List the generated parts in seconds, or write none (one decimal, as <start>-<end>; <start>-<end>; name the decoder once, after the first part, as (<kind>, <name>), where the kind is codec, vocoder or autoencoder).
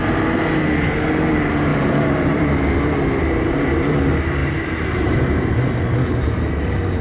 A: 1.7-2.4 (vocoder, BigVGAN v2); 4.4-5.5; 6.1-6.6